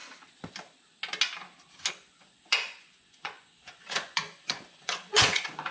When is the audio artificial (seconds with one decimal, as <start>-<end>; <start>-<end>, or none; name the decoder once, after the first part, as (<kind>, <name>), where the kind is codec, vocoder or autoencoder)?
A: 1.9-5.7 (vocoder, Vocos)